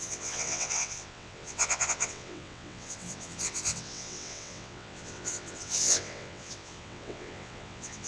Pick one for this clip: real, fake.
fake